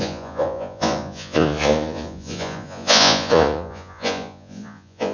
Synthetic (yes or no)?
yes